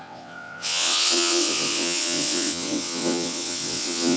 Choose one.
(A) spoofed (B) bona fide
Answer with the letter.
A